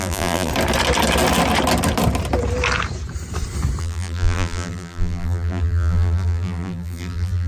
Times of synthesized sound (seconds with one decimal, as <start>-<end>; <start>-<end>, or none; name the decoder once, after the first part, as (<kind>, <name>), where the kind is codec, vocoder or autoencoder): 0.0-0.5 (vocoder, BigVGAN v2); 3.8-7.5